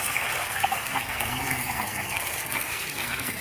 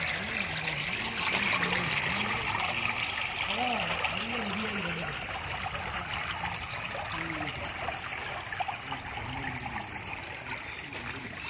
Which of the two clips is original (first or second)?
second